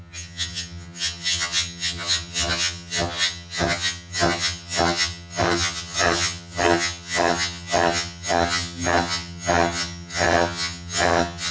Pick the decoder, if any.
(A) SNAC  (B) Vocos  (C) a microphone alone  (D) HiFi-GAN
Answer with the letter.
D